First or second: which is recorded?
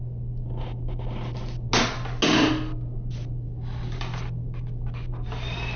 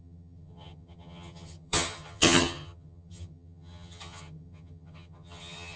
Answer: first